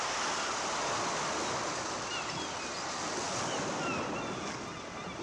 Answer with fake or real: real